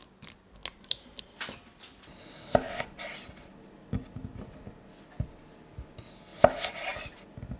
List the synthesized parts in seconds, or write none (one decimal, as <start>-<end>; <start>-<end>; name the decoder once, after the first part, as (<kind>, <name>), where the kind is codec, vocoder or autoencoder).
none